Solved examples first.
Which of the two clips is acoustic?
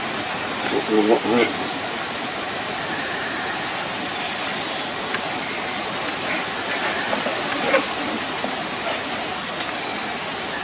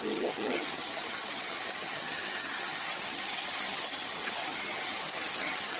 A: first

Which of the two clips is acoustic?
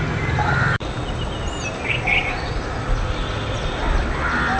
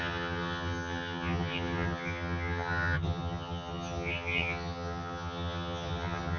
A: first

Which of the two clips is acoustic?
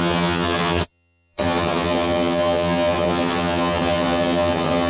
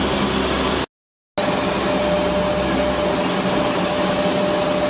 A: second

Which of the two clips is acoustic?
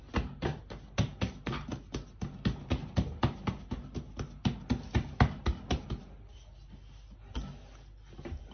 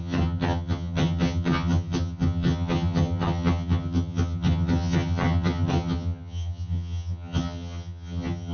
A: first